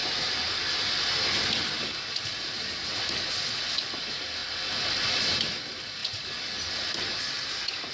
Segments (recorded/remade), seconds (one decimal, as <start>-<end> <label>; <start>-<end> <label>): 0.0-7.9 recorded